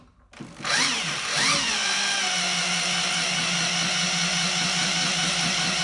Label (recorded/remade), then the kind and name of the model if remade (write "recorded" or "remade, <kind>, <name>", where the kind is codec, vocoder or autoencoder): recorded